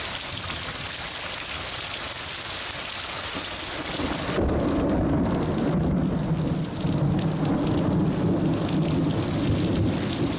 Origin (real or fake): real